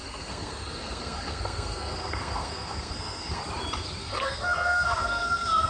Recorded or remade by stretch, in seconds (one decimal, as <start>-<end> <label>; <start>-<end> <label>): 0.0-3.4 remade; 3.4-4.0 recorded; 4.0-5.7 remade